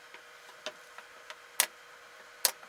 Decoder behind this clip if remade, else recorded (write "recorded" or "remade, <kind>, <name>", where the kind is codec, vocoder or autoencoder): recorded